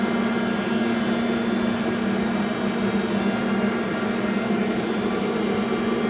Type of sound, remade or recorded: recorded